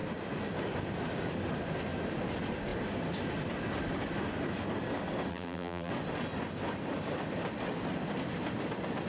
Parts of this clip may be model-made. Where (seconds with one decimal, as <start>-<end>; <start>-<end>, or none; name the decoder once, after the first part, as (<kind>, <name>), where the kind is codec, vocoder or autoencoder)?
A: 5.3-5.9 (vocoder, BigVGAN v2)

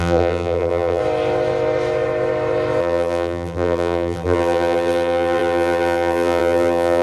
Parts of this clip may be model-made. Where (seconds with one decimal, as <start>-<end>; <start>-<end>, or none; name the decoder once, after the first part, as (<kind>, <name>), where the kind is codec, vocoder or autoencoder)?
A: 0.0-1.0 (vocoder, BigVGAN v2); 2.8-7.0

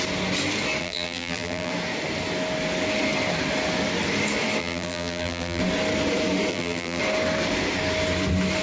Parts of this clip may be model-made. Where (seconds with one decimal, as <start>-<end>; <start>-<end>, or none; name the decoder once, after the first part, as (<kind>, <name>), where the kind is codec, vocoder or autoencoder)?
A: 0.8-1.7 (vocoder, BigVGAN v2); 4.6-5.6; 6.5-7.0

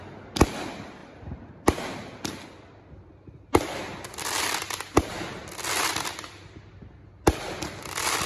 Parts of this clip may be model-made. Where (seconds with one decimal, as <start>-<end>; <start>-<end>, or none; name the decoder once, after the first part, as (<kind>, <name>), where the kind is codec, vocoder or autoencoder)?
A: 1.0-1.7 (vocoder, BigVGAN v2)